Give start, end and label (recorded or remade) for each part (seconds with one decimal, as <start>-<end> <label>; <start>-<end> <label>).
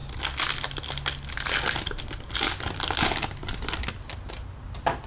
0.0-5.1 recorded